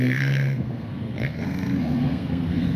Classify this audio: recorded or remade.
remade